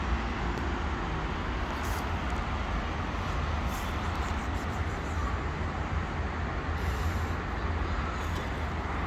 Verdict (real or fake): real